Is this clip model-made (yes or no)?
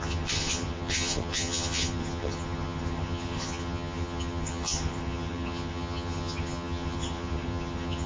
yes